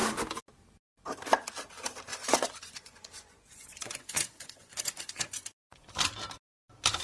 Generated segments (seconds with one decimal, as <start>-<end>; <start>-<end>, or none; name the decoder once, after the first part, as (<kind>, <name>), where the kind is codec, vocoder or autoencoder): 2.1-5.9 (vocoder, Vocos)